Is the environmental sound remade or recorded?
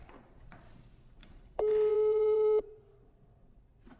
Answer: remade